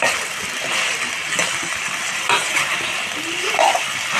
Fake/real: fake